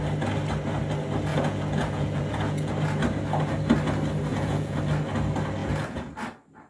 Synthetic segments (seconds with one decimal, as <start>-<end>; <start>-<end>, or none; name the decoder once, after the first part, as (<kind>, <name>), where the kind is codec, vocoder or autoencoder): 1.3-2.7 (vocoder, Vocos); 4.3-4.8; 5.6-6.1